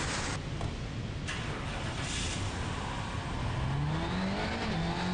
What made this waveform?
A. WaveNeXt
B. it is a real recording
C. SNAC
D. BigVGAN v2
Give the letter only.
B